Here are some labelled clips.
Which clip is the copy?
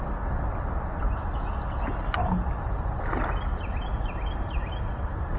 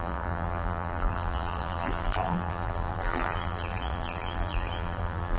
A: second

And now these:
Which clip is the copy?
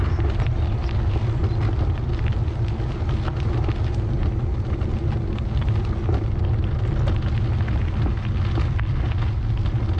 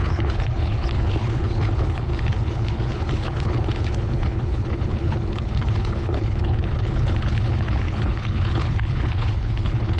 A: second